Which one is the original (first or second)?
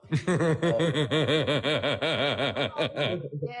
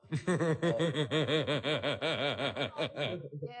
first